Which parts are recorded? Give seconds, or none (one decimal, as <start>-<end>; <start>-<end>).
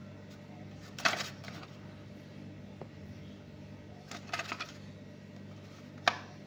0.0-6.5